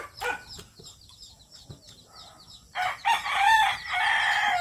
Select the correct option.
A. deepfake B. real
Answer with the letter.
B